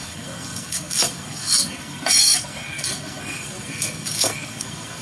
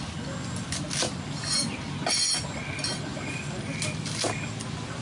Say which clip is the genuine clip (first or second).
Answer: second